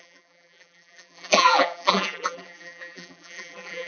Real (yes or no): no